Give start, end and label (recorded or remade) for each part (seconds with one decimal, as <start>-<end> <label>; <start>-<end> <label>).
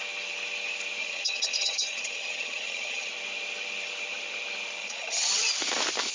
0.0-1.0 recorded; 1.0-3.1 remade; 3.1-4.8 recorded; 4.8-5.5 remade; 5.5-6.1 recorded